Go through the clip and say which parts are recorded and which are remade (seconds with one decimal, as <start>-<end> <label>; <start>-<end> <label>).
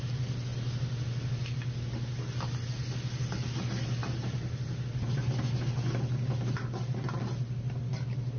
0.0-8.4 recorded